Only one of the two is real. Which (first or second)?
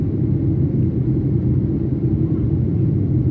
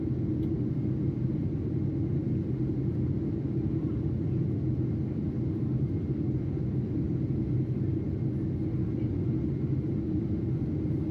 second